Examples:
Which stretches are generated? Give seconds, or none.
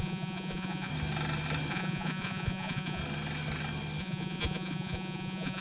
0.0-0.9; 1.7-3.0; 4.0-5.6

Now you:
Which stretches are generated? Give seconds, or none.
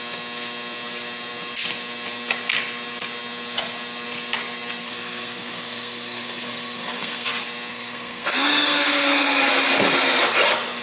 4.8-7.3; 7.7-9.4